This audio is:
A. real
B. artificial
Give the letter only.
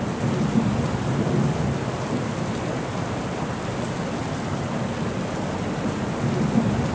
A